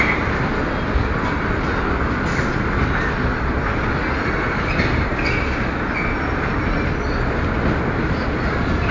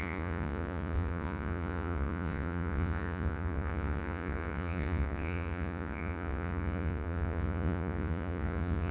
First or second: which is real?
first